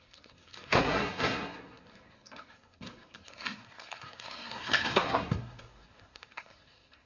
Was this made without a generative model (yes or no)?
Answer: no